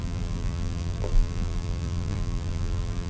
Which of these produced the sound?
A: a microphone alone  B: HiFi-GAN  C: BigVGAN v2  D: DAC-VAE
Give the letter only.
C